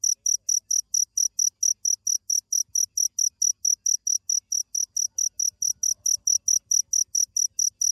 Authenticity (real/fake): real